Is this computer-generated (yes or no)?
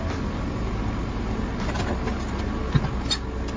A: no